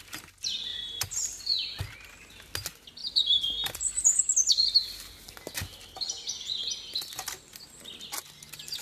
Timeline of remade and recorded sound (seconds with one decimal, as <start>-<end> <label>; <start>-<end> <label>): 0.0-0.7 recorded; 0.7-1.8 remade; 1.8-3.0 recorded; 3.0-4.2 remade; 4.2-8.8 recorded